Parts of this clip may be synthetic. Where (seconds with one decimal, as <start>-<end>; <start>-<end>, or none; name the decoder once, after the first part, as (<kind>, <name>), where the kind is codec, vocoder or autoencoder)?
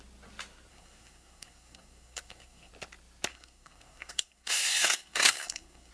0.7-2.7 (codec, SNAC); 3.3-5.9